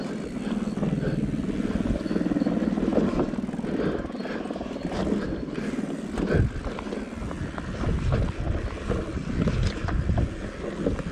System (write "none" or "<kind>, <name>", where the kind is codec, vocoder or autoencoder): none